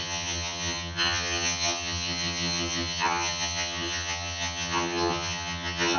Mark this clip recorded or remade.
remade